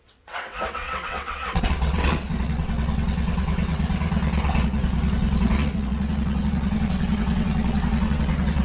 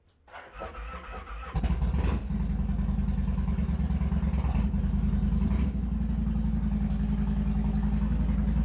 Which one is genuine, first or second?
second